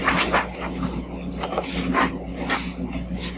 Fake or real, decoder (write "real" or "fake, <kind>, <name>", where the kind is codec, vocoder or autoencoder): real